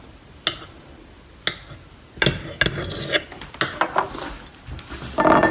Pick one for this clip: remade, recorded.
recorded